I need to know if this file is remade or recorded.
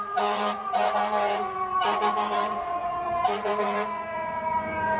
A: remade